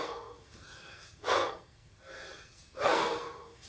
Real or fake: fake